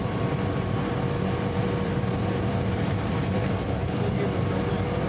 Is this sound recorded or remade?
remade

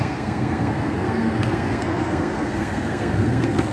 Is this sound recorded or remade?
remade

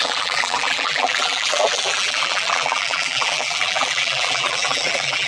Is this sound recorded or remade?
remade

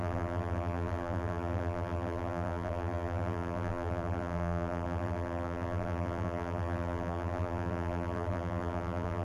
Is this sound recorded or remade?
remade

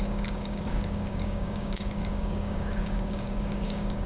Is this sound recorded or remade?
remade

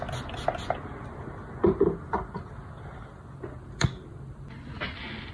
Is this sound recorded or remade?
recorded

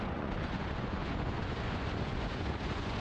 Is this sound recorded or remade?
remade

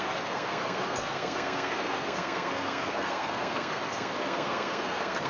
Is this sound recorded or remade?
remade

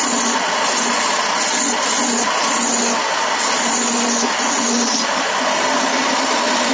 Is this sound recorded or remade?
recorded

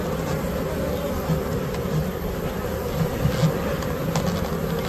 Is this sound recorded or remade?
recorded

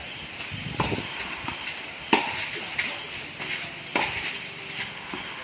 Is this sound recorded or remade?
recorded